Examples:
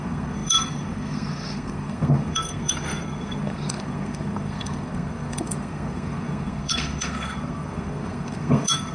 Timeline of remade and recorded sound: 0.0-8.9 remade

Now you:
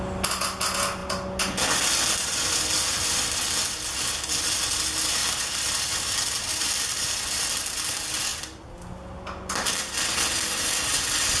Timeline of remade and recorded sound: 0.0-5.2 recorded; 5.2-6.6 remade; 6.6-8.3 recorded; 8.3-8.8 remade; 8.8-11.4 recorded

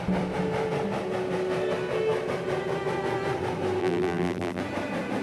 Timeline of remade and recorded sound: 0.0-3.8 recorded; 3.8-4.6 remade; 4.6-5.2 recorded